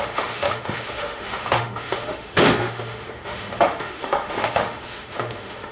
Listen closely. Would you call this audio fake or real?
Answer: fake